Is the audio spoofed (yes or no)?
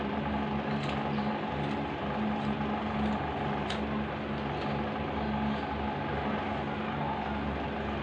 no